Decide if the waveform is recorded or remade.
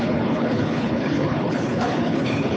remade